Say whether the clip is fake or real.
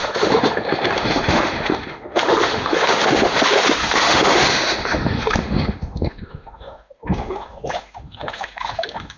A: fake